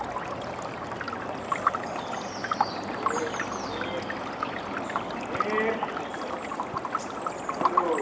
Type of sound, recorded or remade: recorded